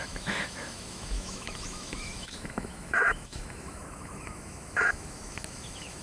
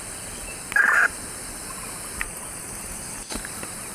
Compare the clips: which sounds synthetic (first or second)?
first